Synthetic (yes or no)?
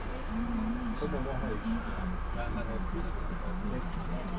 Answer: no